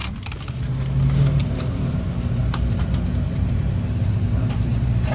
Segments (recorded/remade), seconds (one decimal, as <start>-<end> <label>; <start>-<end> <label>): 0.0-0.6 remade; 0.6-1.4 recorded; 1.4-2.4 remade; 2.4-3.3 recorded; 3.3-5.1 remade